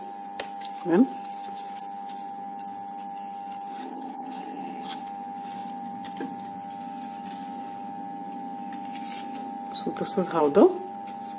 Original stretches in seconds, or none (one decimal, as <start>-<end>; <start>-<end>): 0.0-3.8; 5.0-11.4